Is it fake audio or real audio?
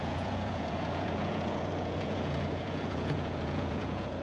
fake